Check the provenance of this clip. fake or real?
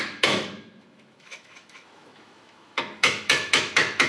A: fake